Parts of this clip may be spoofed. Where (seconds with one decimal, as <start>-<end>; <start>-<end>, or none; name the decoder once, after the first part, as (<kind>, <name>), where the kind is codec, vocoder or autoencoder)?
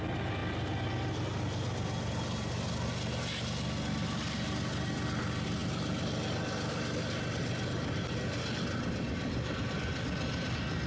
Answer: none